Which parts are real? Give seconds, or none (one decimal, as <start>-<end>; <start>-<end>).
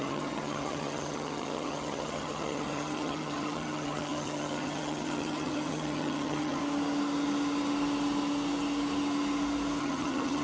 6.6-9.8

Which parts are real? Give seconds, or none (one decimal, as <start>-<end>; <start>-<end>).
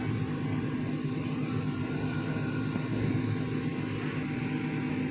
0.0-5.1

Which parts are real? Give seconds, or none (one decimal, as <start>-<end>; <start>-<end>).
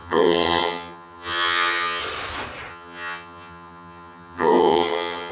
2.0-2.7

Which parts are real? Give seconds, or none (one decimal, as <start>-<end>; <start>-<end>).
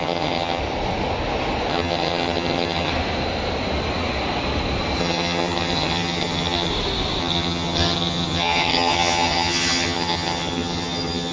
0.6-1.7; 2.9-5.0; 6.7-7.2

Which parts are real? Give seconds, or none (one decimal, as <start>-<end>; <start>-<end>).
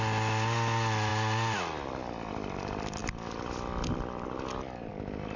0.0-5.4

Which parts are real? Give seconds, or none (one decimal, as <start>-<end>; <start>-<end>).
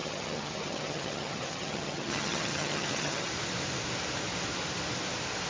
3.3-5.5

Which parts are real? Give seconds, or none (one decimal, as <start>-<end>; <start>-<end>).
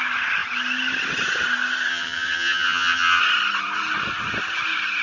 0.0-1.9; 3.2-5.0